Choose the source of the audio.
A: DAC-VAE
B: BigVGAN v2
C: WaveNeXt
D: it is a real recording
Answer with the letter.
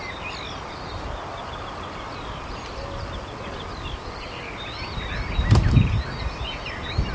D